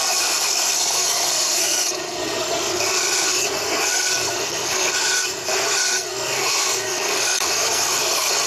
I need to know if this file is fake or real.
fake